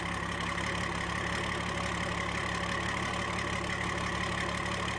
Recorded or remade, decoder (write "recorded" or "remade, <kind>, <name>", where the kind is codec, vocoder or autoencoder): recorded